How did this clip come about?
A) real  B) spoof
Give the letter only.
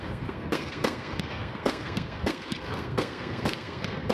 B